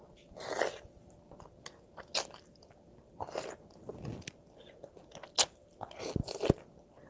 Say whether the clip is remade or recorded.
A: recorded